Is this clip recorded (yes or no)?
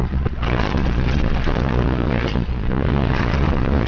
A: no